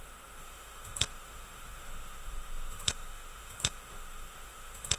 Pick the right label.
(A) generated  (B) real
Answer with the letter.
A